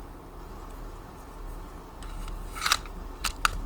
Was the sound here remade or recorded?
recorded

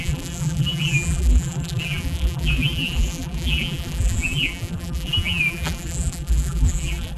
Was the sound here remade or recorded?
remade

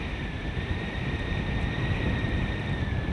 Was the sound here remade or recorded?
remade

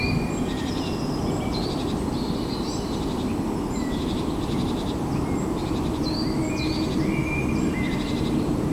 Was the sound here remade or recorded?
recorded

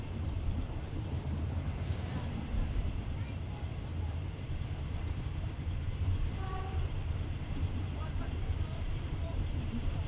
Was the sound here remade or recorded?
remade